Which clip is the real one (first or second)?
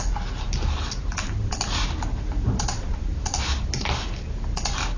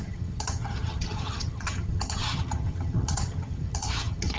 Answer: first